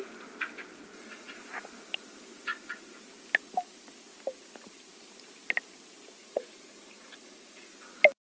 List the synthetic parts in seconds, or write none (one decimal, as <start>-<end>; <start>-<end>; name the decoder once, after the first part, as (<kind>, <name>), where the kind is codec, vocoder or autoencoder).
0.9-1.4 (vocoder, Vocos); 6.2-7.7